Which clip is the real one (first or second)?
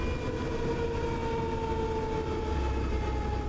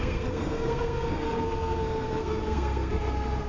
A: first